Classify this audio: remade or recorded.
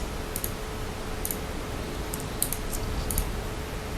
recorded